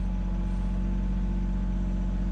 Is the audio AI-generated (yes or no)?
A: no